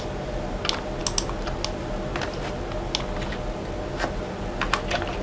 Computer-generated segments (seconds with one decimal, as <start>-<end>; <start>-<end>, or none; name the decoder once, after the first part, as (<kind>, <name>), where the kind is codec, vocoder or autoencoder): none